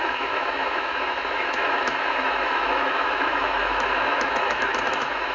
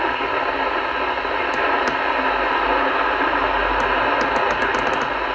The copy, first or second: first